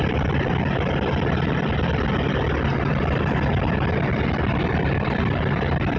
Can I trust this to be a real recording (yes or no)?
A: yes